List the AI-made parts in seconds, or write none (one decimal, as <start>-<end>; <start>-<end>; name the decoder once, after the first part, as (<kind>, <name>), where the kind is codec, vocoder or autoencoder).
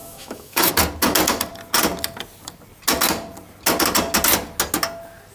0.0-0.7 (autoencoder, DAC-VAE)